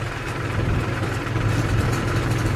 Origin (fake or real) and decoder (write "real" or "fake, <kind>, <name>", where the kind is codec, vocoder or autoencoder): fake, vocoder, BigVGAN v2